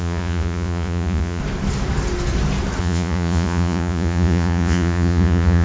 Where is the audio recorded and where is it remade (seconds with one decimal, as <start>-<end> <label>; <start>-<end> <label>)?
0.0-1.4 remade; 1.4-2.8 recorded; 2.8-5.6 remade